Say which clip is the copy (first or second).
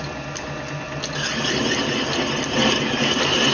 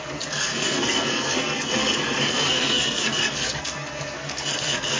second